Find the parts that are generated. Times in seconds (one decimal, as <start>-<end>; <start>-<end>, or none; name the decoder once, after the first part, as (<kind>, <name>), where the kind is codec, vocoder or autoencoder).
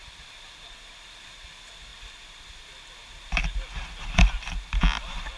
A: 0.0-1.9 (vocoder, BigVGAN v2)